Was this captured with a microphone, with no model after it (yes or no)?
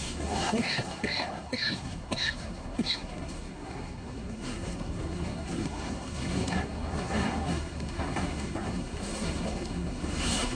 no